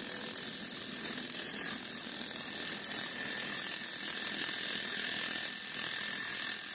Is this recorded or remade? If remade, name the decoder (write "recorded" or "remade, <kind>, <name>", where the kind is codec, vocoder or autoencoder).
recorded